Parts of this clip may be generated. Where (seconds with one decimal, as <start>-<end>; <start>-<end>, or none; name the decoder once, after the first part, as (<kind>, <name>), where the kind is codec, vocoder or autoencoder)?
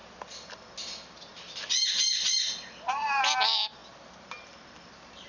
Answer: none